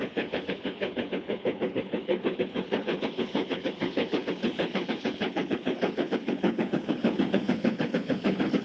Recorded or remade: remade